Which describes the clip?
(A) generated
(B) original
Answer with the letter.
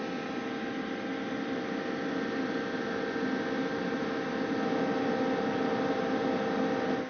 B